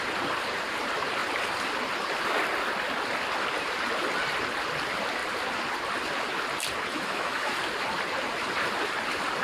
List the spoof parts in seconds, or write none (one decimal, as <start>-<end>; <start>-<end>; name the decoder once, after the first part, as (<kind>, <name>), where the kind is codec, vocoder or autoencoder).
6.9-7.6 (autoencoder, DAC-VAE)